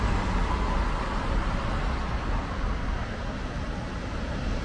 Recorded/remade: recorded